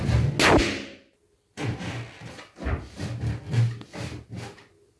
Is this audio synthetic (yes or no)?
no